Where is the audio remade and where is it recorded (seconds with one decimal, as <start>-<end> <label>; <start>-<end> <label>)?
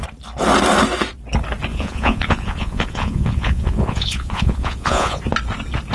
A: 0.0-1.7 recorded; 1.7-5.2 remade; 5.2-5.9 recorded